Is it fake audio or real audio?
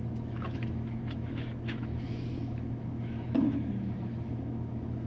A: fake